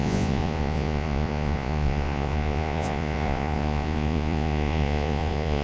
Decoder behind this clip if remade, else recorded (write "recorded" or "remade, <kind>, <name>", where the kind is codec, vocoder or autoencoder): remade, vocoder, Vocos